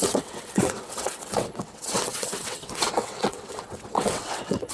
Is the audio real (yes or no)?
no